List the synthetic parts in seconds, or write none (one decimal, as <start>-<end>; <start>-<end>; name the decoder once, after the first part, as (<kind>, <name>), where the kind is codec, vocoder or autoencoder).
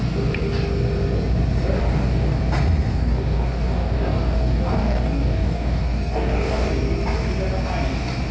1.8-2.4 (codec, DAC); 2.9-6.7